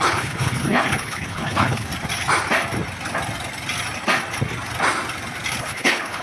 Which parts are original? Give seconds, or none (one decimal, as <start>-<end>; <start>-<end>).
1.9-5.6